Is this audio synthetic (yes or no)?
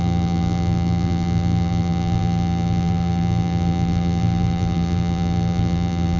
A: yes